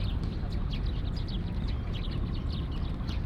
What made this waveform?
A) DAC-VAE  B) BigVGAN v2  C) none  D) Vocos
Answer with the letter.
C